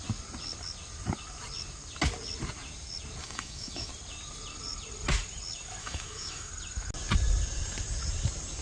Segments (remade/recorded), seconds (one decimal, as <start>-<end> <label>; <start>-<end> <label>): 0.0-3.2 recorded; 3.2-3.9 remade; 3.9-5.8 recorded; 5.8-6.5 remade; 6.5-8.6 recorded